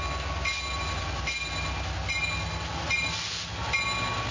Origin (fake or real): real